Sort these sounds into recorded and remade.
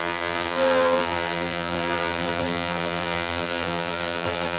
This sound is remade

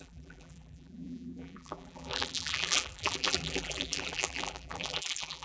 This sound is remade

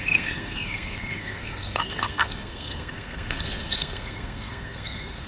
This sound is remade